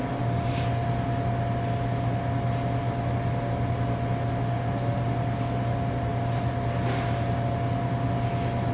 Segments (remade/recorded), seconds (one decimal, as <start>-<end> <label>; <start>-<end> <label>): 0.0-8.7 recorded